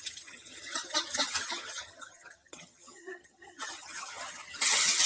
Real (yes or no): no